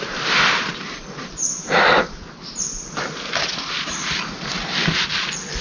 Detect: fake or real real